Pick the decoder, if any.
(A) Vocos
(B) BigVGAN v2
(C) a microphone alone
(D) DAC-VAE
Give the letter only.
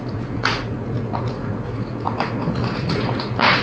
A